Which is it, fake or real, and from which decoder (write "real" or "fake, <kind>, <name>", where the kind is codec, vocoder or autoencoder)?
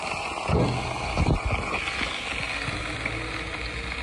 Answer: real